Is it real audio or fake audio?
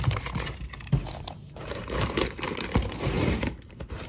fake